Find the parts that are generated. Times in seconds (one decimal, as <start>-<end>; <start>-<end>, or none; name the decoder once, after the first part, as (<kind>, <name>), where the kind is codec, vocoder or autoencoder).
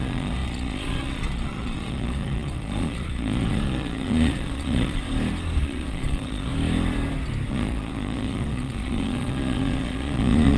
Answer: 0.0-5.0 (vocoder, Vocos); 5.6-6.5; 7.5-10.6